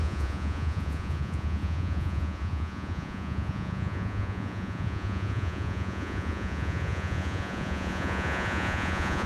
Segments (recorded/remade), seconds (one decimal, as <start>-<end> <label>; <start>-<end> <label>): 0.0-9.3 remade